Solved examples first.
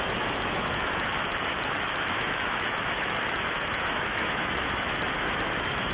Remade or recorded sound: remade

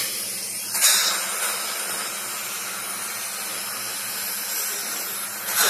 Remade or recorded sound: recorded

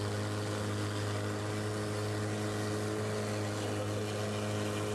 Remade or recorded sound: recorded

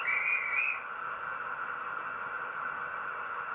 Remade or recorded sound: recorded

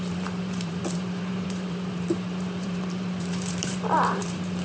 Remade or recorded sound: remade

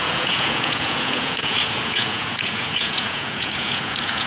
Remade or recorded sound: remade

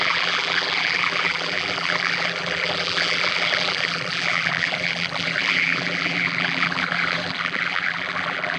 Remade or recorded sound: remade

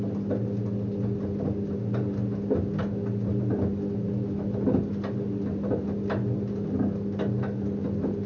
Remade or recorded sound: recorded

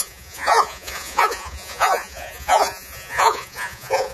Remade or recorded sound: remade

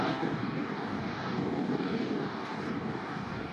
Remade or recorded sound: remade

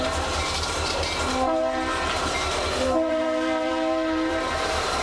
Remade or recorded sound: remade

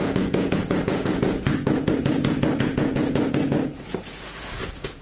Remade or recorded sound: remade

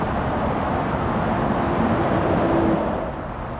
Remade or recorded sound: recorded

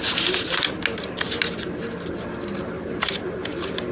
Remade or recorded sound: recorded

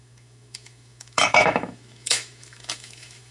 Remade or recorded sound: remade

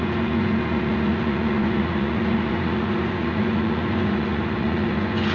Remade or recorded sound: remade